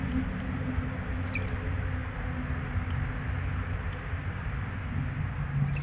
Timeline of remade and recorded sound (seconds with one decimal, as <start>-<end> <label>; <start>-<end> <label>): 0.0-5.8 recorded